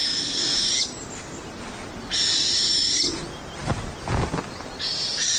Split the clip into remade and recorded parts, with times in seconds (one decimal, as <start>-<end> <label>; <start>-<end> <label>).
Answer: 0.0-5.4 recorded